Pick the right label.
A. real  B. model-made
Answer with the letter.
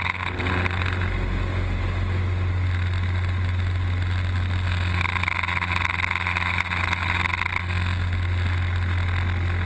A